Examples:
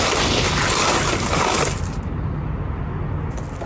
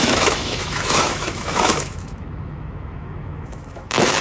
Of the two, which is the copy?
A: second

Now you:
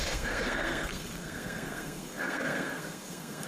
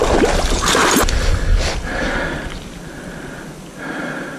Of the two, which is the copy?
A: first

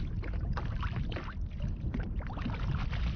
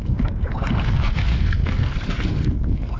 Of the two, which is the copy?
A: second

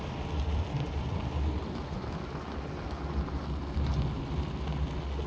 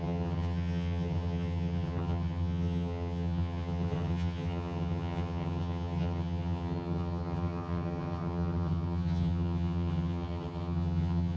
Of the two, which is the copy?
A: second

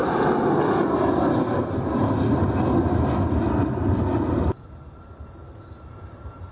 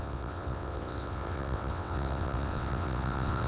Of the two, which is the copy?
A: second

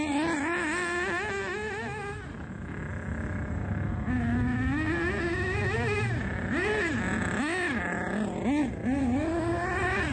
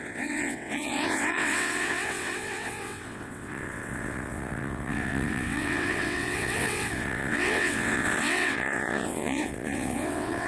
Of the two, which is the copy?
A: second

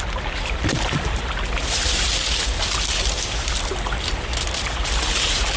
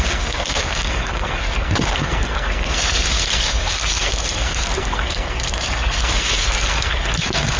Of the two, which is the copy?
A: second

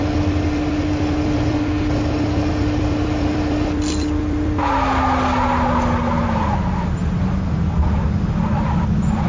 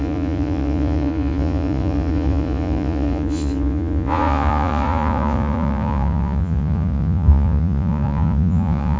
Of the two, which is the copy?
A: second